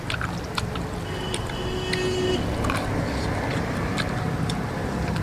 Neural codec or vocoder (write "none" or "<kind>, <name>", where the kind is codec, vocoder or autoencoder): none